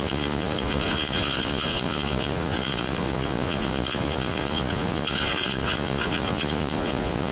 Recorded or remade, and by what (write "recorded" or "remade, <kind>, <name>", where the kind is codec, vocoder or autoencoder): remade, vocoder, Vocos